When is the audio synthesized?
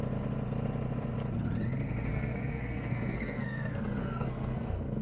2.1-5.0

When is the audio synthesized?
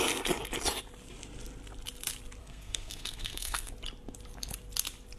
2.4-3.7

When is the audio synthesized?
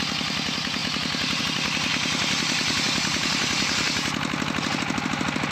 none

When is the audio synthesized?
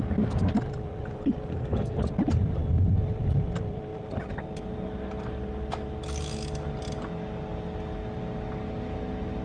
1.5-2.0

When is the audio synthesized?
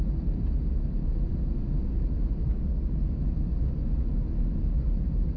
none